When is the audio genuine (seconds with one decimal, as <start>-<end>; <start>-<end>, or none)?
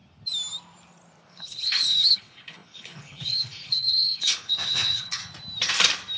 0.0-1.3; 5.2-6.2